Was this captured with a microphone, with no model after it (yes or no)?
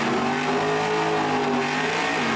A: yes